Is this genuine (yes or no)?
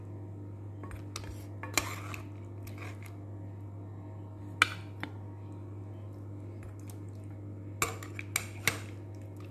yes